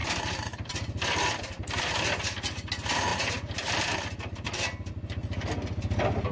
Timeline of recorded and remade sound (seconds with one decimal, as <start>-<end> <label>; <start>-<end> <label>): 0.0-6.3 recorded